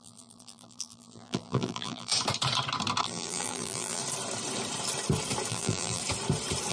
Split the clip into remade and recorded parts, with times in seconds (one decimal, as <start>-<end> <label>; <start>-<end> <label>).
0.0-2.1 remade; 2.1-3.0 recorded; 3.0-4.0 remade; 4.0-5.5 recorded; 5.5-6.0 remade; 6.0-6.7 recorded